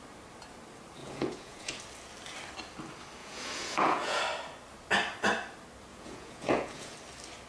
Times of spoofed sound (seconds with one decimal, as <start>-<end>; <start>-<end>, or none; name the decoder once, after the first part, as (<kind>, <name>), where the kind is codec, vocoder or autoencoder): 1.0-1.8 (vocoder, Vocos); 3.2-4.2; 5.9-6.9